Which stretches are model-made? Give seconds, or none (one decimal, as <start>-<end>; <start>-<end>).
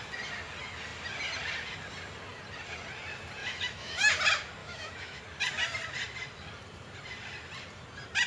3.4-4.1; 4.6-5.2